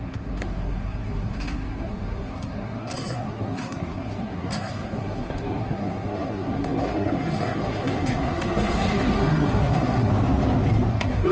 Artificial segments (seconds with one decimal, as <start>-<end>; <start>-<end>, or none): 0.0-10.1; 10.9-11.3